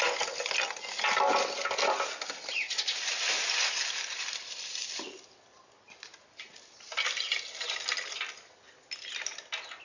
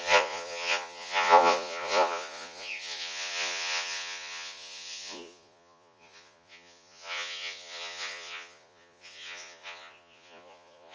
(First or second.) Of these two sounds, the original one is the first